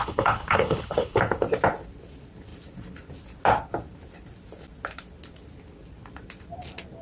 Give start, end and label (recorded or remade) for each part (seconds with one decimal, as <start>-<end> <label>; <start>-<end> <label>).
0.0-1.2 remade; 1.2-7.0 recorded